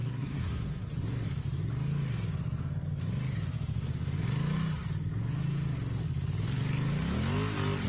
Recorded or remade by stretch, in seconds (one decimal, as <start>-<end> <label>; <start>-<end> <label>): 0.0-0.9 remade; 0.9-7.9 recorded